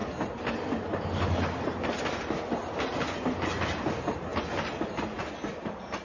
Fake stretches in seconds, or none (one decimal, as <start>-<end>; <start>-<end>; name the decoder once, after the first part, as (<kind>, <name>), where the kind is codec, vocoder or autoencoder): none